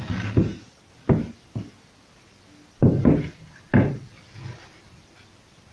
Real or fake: real